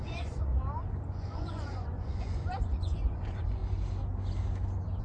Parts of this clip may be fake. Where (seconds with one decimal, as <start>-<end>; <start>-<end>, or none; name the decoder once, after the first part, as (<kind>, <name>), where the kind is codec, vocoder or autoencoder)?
0.0-0.5 (vocoder, Vocos); 1.1-3.6